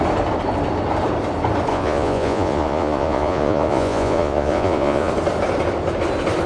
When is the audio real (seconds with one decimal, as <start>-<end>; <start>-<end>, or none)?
0.0-1.7; 5.1-6.5